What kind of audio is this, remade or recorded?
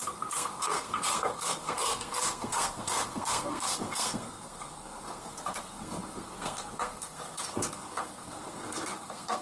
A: remade